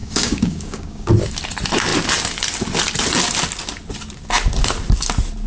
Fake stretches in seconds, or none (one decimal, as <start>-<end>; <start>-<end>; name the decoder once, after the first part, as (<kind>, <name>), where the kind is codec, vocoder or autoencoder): 0.0-1.1 (codec, DAC)